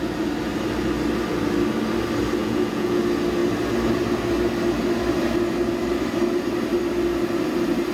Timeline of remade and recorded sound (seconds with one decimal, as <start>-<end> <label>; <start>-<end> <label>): 0.0-2.4 recorded; 2.4-3.0 remade; 3.0-7.9 recorded

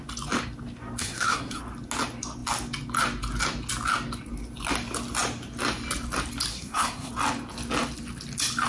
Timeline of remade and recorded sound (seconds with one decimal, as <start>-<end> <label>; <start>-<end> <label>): 0.0-1.0 recorded; 1.0-1.6 remade; 1.6-6.5 recorded; 6.5-7.1 remade; 7.1-8.7 recorded

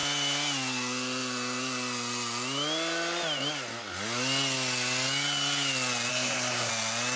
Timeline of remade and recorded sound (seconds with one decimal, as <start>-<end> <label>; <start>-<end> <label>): 0.0-6.1 recorded; 6.1-6.7 remade; 6.7-7.2 recorded

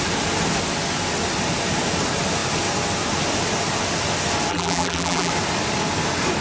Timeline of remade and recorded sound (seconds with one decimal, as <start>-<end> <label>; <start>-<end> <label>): 0.0-4.5 recorded; 4.5-5.3 remade; 5.3-6.4 recorded

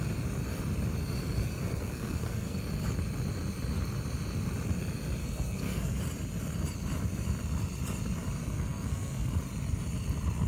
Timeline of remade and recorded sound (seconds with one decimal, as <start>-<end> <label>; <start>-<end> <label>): 0.0-1.5 recorded; 1.5-2.6 remade; 2.6-5.2 recorded; 5.2-6.0 remade; 6.0-8.4 recorded; 8.4-9.3 remade; 9.3-10.5 recorded

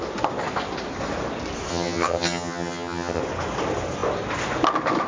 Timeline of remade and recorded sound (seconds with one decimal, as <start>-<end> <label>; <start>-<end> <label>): 0.0-1.7 recorded; 1.7-3.2 remade; 3.2-5.1 recorded

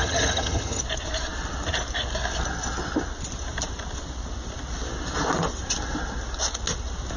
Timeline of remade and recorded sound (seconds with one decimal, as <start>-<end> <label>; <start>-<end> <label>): 0.0-0.8 remade; 0.8-7.2 recorded

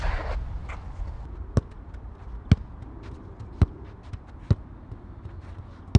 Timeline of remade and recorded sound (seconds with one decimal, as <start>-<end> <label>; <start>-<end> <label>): 0.0-6.0 recorded